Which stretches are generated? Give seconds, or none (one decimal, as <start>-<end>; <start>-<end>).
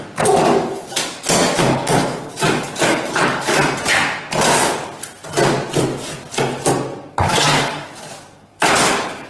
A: 0.0-3.5; 7.1-9.3